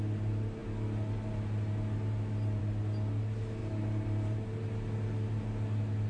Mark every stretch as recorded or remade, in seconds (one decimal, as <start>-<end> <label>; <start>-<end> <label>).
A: 0.0-3.6 recorded; 3.6-4.5 remade; 4.5-6.1 recorded

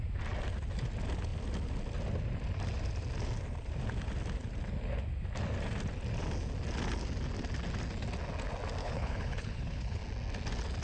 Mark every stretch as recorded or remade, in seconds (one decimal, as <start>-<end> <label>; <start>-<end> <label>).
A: 0.0-8.8 recorded; 8.8-10.0 remade; 10.0-10.8 recorded